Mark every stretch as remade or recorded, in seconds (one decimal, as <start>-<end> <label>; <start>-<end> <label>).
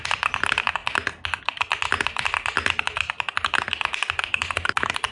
0.0-5.1 recorded